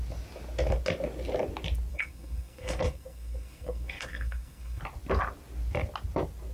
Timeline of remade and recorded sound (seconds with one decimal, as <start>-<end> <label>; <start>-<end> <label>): 0.0-1.9 recorded; 1.9-4.8 remade; 4.8-6.5 recorded